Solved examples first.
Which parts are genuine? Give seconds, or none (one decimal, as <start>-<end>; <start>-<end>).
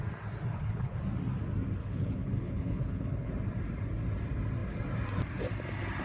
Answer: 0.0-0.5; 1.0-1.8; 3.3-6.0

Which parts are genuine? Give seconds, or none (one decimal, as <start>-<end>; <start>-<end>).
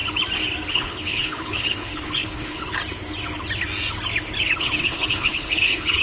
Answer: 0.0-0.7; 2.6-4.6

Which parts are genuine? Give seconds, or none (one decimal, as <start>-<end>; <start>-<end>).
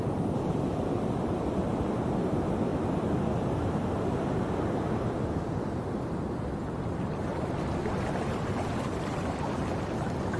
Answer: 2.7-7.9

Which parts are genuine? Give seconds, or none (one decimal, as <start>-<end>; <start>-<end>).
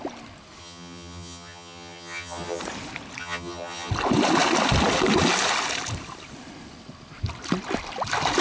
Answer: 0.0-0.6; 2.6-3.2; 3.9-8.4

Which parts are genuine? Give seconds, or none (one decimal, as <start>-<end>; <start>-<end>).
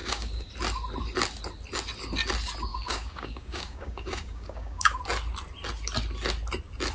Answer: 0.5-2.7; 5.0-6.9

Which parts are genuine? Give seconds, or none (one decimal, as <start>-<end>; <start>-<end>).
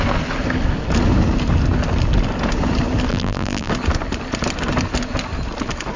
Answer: 0.0-3.1; 3.7-6.0